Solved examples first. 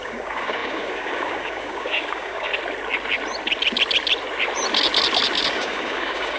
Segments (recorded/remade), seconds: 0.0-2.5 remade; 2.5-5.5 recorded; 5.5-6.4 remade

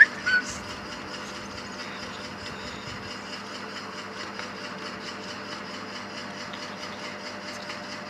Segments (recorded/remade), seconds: 0.0-8.1 recorded

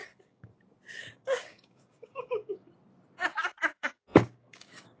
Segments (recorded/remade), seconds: 0.0-0.5 remade; 0.5-1.0 recorded; 1.0-2.7 remade; 2.7-3.7 recorded; 3.7-5.0 remade